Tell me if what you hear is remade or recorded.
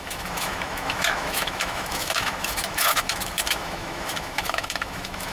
remade